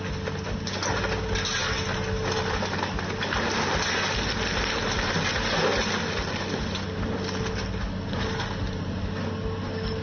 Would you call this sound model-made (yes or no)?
no